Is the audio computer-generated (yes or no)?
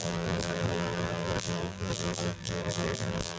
yes